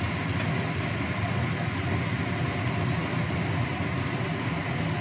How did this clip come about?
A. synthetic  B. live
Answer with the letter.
B